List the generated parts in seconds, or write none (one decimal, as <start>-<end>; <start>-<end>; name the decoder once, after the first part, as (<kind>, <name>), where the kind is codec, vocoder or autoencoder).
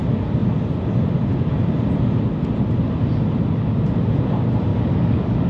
4.7-5.5 (codec, DAC)